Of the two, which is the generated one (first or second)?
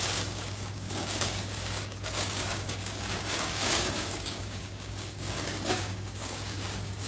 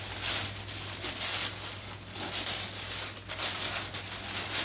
first